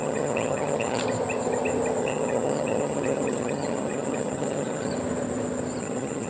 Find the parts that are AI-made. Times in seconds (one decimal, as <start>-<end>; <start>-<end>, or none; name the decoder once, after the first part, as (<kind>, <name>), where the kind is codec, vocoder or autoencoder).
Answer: 0.0-1.0 (vocoder, HiFi-GAN); 2.0-4.9; 5.8-6.3